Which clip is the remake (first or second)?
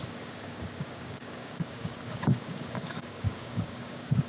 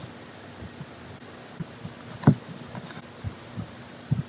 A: first